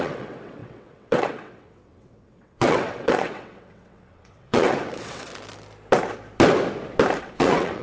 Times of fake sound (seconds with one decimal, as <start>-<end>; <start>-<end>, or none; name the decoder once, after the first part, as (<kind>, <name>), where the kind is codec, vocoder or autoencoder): 0.0-5.3 (vocoder, WaveNeXt); 7.2-7.8